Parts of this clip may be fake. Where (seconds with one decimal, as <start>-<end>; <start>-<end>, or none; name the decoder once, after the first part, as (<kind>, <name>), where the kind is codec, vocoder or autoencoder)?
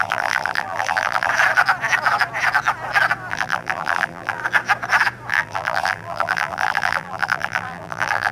0.0-1.3 (vocoder, BigVGAN v2); 3.3-4.4; 5.3-8.3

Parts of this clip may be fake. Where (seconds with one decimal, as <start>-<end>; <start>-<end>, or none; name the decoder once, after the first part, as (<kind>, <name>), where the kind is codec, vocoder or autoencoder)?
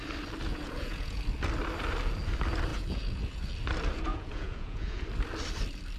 0.5-1.2 (vocoder, Vocos); 2.7-3.5; 4.1-5.0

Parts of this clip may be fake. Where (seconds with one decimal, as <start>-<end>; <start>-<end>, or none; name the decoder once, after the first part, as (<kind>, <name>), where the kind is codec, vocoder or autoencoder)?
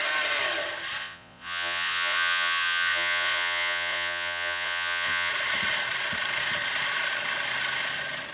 1.0-5.3 (vocoder, Vocos)